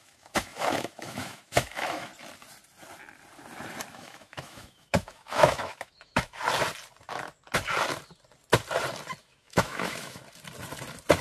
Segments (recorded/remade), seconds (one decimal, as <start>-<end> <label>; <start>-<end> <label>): 0.0-2.1 remade; 2.1-3.9 recorded; 3.9-6.4 remade; 6.4-9.2 recorded; 9.2-10.2 remade; 10.2-11.2 recorded